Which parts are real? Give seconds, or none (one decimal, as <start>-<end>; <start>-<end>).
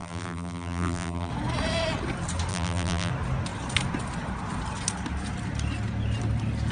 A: 1.3-2.5; 3.1-6.7